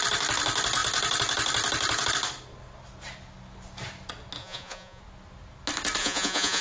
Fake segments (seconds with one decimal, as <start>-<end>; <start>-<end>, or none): 4.4-5.0; 6.0-6.6